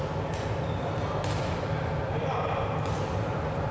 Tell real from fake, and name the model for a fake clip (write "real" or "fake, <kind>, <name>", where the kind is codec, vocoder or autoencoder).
real